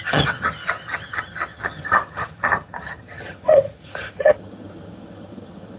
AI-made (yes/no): yes